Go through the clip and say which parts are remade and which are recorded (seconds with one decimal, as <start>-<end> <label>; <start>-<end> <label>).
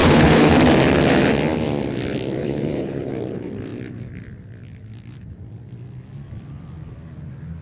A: 0.0-0.5 remade; 0.5-2.4 recorded; 2.4-3.1 remade; 3.1-7.6 recorded